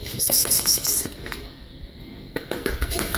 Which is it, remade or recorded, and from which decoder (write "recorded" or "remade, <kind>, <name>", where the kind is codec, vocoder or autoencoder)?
remade, codec, SNAC